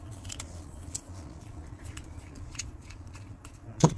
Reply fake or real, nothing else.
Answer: fake